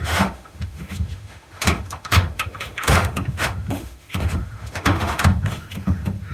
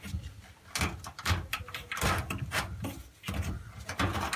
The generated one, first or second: first